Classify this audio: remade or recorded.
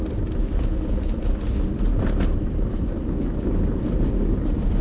recorded